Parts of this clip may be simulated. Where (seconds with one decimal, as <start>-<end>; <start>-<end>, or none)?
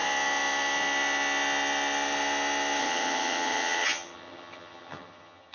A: 2.8-5.5